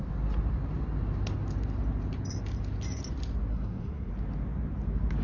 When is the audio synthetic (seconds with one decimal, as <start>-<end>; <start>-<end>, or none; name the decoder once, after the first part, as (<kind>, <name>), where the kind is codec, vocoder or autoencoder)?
3.5-4.1 (codec, SNAC)